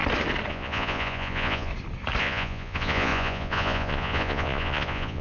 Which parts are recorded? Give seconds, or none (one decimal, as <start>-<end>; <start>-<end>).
0.0-0.5; 1.7-2.2